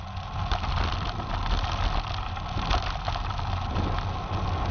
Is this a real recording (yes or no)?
yes